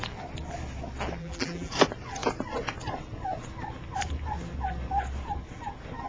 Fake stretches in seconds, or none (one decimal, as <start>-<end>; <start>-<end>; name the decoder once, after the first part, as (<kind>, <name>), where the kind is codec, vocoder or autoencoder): 1.2-1.7 (vocoder, BigVGAN v2)